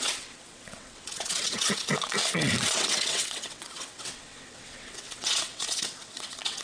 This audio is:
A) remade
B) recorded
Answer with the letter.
A